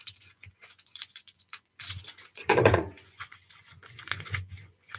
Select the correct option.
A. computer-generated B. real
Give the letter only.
A